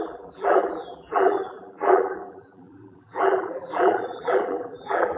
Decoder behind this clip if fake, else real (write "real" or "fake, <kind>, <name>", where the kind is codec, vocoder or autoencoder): fake, vocoder, BigVGAN v2